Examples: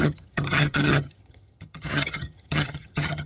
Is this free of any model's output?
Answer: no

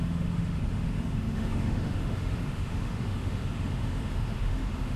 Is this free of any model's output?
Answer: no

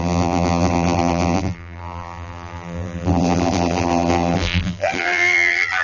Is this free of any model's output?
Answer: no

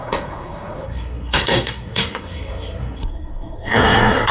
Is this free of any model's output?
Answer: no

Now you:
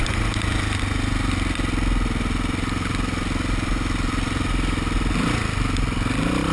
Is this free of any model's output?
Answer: yes